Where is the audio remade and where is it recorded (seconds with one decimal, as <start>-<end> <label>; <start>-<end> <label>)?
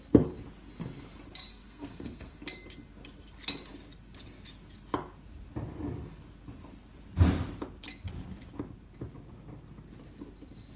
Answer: 0.0-1.5 recorded; 1.5-2.4 remade; 2.4-10.8 recorded